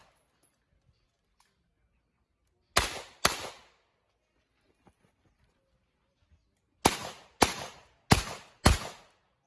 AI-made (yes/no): no